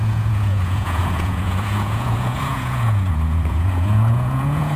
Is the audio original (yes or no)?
no